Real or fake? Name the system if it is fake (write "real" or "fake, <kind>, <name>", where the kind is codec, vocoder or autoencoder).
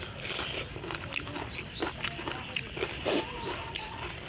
fake, vocoder, BigVGAN v2